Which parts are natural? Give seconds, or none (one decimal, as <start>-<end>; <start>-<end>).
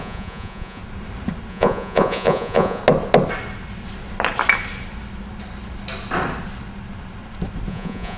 0.8-1.5; 2.8-7.7